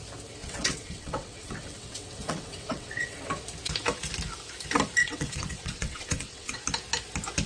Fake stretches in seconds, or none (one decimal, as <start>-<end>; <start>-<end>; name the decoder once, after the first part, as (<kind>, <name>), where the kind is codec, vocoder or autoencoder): 0.4-3.3 (vocoder, WaveNeXt); 5.0-6.6